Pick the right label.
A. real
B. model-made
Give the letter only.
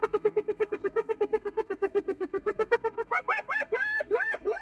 B